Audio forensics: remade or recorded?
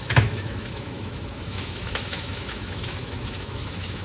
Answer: remade